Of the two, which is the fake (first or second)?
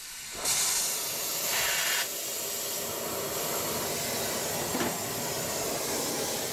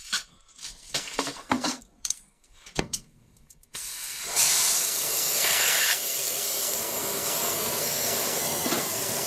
second